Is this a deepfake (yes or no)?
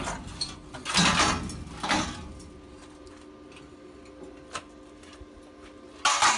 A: no